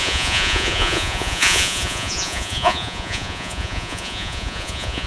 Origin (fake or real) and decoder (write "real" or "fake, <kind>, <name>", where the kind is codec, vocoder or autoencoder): fake, vocoder, Vocos